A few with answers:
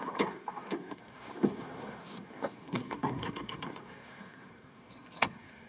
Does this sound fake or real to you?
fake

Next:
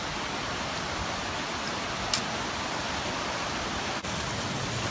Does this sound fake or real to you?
real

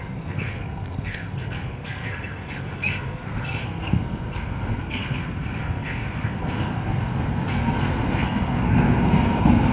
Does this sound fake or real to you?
fake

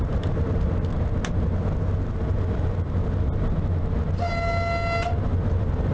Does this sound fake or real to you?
real